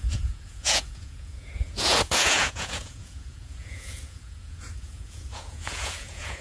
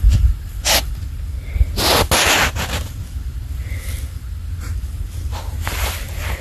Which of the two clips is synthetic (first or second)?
first